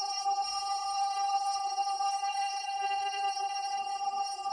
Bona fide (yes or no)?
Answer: no